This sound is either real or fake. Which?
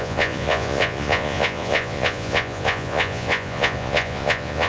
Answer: fake